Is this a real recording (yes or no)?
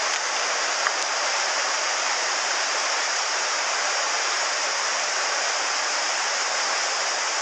no